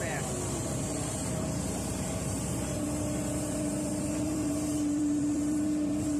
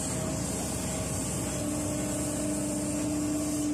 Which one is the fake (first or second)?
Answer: first